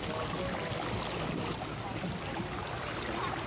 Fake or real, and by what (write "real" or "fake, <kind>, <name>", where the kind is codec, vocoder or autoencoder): real